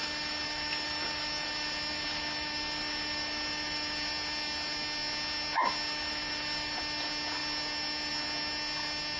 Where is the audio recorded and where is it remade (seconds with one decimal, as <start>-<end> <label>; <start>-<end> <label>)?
0.0-4.1 remade; 4.1-5.9 recorded; 5.9-6.8 remade; 6.8-9.2 recorded

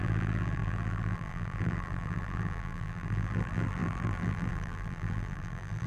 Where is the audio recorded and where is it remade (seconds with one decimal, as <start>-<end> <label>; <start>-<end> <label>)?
0.0-5.9 remade

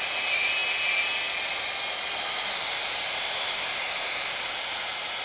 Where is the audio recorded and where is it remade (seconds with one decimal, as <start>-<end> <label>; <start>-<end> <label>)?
0.0-0.6 remade; 0.6-3.7 recorded; 3.7-5.2 remade

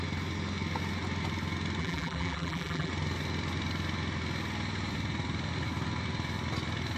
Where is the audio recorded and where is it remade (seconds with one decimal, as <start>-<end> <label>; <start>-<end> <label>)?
0.0-1.8 recorded; 1.8-2.9 remade; 2.9-7.0 recorded

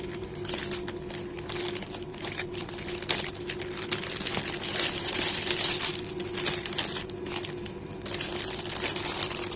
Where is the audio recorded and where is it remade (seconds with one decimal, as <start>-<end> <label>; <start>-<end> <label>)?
0.0-2.1 recorded; 2.1-2.7 remade; 2.7-4.7 recorded; 4.7-5.9 remade; 5.9-9.6 recorded

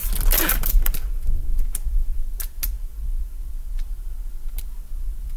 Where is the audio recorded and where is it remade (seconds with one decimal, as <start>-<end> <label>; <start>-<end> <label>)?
0.0-5.4 recorded

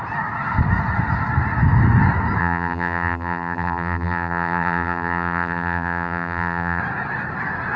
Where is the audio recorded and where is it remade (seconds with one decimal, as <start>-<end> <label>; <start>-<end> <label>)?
0.0-2.4 recorded; 2.4-6.8 remade; 6.8-7.8 recorded